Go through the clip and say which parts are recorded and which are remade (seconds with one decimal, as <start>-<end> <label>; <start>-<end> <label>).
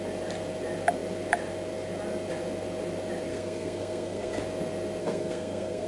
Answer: 0.0-3.3 recorded; 3.3-4.4 remade; 4.4-5.0 recorded; 5.0-5.9 remade